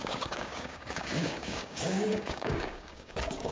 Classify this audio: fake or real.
fake